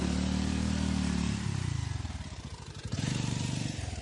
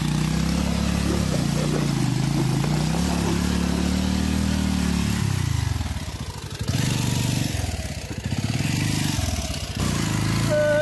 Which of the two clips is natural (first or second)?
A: second